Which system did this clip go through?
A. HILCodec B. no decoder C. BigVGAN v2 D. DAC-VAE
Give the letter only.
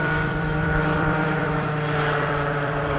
C